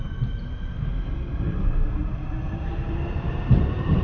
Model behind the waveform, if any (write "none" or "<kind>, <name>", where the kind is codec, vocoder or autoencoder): vocoder, BigVGAN v2